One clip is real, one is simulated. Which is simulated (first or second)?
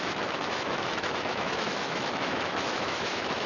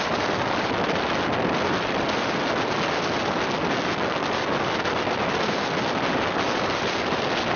first